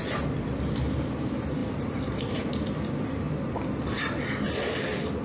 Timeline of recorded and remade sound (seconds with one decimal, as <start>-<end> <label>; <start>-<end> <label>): 0.0-5.2 remade